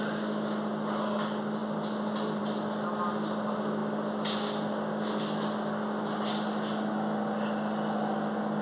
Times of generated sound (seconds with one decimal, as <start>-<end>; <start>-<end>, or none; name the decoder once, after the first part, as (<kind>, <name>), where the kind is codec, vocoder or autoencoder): none